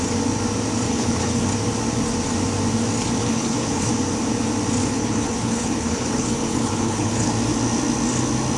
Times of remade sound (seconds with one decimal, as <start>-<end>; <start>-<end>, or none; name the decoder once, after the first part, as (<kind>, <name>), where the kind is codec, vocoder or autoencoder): 0.9-1.5 (codec, HILCodec); 3.2-3.9; 4.8-7.3